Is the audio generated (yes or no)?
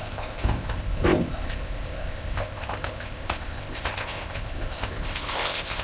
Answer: yes